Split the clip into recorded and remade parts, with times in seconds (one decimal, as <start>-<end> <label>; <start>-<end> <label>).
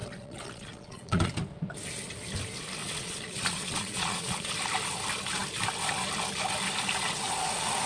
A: 0.0-1.3 remade; 1.3-2.8 recorded; 2.8-4.5 remade; 4.5-7.9 recorded